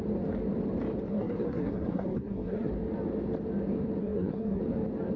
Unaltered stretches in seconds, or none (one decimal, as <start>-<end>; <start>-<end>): 0.0-1.1; 2.7-4.0; 4.6-5.2